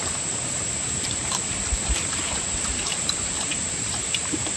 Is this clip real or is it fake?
fake